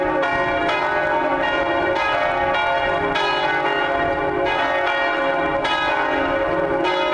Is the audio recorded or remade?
recorded